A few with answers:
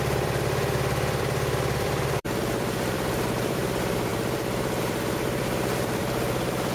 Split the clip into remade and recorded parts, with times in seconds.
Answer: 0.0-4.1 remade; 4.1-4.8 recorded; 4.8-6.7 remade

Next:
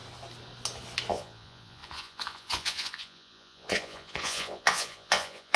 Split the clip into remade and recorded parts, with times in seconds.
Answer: 0.0-1.1 recorded; 1.1-5.6 remade

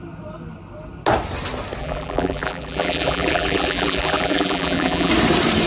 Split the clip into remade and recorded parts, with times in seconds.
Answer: 0.0-1.8 recorded; 1.8-5.1 remade; 5.1-5.7 recorded

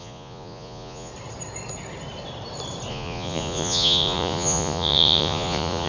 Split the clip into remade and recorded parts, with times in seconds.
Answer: 0.0-1.1 remade; 1.1-2.9 recorded; 2.9-5.9 remade